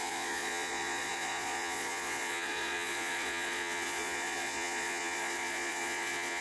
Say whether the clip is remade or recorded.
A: remade